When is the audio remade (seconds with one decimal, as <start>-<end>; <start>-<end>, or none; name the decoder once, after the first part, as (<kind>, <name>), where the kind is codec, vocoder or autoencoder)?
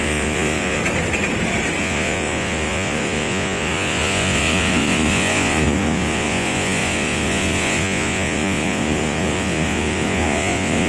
0.0-0.8 (vocoder, Vocos); 1.8-10.9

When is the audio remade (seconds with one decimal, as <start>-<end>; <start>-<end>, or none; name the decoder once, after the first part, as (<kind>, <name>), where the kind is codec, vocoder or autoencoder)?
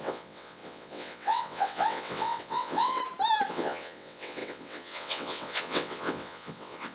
0.0-3.0 (vocoder, WaveNeXt); 3.5-6.9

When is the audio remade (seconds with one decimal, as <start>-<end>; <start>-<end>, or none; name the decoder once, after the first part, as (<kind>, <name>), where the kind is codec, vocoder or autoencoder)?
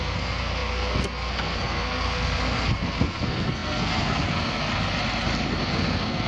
0.0-4.7 (codec, SNAC); 5.6-6.3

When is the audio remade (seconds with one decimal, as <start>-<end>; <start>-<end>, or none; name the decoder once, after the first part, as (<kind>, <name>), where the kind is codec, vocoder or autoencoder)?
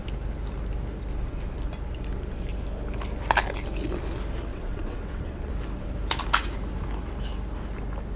4.5-5.5 (vocoder, WaveNeXt)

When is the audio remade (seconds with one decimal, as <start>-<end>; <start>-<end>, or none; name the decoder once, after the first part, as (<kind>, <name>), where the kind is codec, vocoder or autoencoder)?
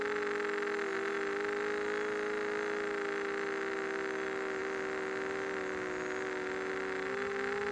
none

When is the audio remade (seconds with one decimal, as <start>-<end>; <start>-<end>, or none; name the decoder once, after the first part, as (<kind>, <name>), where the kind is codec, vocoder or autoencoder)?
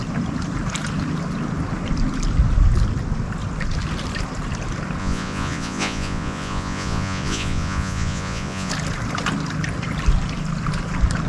5.0-8.7 (vocoder, Vocos)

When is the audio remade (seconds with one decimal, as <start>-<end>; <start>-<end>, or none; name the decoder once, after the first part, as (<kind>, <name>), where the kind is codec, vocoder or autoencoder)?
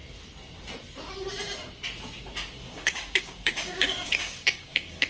2.6-5.1 (codec, DAC)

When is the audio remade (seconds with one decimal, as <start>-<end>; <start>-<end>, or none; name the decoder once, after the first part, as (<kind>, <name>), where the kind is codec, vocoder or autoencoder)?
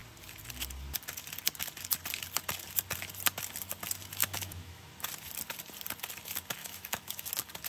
4.2-4.9 (autoencoder, DAC-VAE); 6.6-7.3